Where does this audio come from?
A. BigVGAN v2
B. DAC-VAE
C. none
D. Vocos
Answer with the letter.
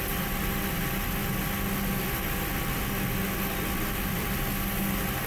C